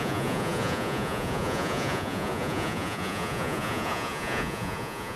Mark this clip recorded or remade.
remade